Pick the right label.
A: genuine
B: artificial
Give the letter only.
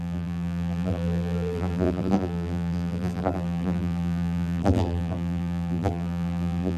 B